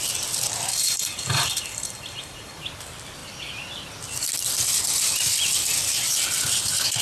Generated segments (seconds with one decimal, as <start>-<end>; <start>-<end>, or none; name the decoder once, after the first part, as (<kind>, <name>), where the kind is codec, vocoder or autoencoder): 0.7-2.6 (vocoder, BigVGAN v2)